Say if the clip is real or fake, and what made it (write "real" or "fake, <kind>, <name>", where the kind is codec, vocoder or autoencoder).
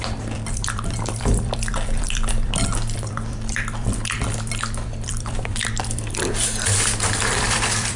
fake, vocoder, BigVGAN v2